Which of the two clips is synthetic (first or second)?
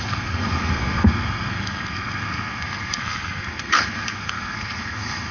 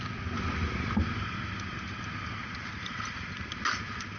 first